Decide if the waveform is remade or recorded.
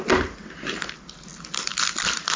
recorded